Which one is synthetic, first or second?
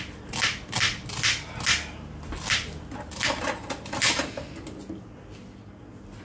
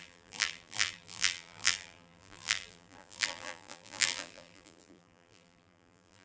second